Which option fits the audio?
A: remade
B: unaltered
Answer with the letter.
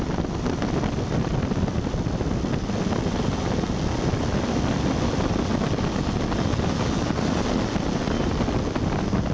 B